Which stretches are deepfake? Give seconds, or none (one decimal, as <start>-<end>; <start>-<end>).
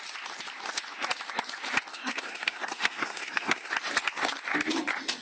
1.9-3.7